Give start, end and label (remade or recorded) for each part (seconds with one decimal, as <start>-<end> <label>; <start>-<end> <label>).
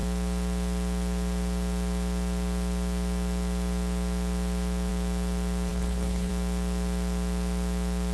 0.0-5.7 recorded; 5.7-6.3 remade; 6.3-8.1 recorded